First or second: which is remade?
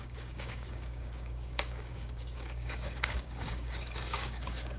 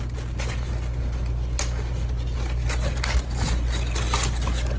first